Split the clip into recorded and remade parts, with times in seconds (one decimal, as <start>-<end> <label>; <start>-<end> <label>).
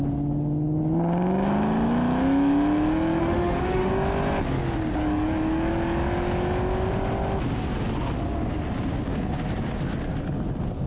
0.0-3.2 recorded; 3.2-3.9 remade; 3.9-10.9 recorded